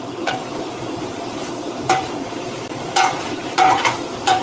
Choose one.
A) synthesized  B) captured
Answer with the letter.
A